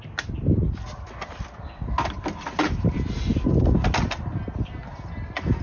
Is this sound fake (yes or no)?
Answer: no